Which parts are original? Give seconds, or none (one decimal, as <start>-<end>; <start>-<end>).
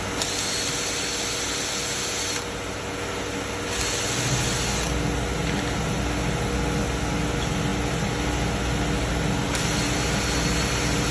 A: 0.0-11.1